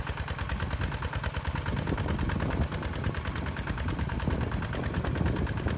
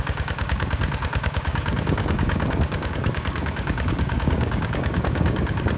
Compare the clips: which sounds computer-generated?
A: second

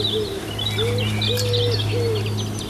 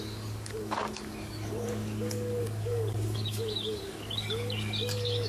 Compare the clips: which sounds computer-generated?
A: second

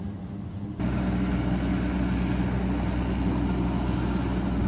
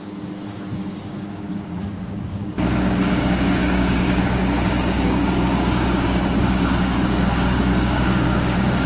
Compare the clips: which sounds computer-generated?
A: second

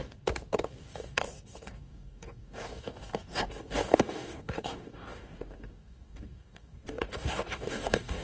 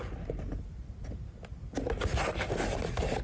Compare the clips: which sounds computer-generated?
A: first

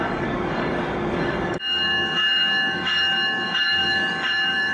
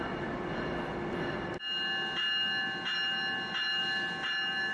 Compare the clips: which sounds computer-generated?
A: first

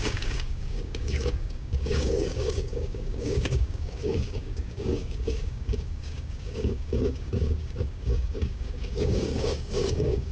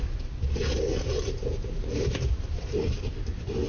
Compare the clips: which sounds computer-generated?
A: first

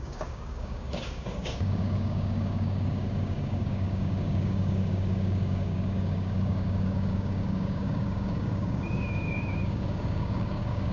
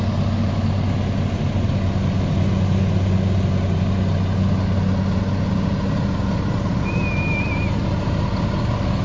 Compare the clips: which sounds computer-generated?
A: first